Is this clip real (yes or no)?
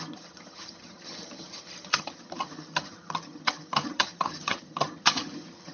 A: no